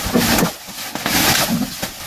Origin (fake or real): real